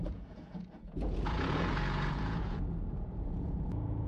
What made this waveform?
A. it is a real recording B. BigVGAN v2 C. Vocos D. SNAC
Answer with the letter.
C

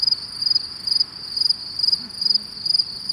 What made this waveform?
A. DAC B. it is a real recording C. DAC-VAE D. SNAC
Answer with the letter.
B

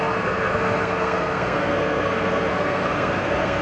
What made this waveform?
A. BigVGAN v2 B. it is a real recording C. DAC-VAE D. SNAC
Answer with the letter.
D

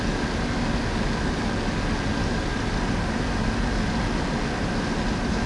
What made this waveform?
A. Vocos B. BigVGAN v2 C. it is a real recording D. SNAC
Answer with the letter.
C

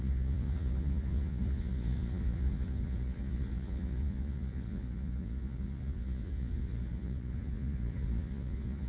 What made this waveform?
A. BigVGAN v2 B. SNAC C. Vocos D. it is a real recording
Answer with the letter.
C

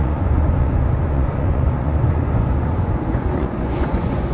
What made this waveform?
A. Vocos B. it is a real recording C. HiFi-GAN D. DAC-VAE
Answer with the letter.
A